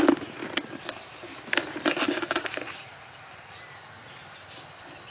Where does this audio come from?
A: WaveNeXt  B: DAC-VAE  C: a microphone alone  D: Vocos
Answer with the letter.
C